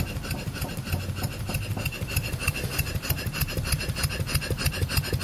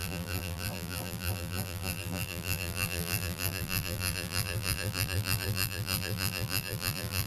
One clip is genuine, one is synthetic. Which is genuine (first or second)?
first